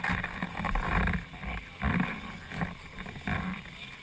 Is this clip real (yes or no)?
yes